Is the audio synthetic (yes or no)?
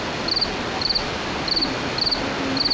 no